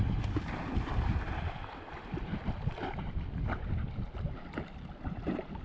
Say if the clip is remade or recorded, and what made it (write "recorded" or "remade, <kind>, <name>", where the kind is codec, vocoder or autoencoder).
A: recorded